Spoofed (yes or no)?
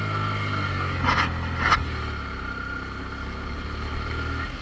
no